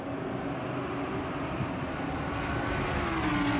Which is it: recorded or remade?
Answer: recorded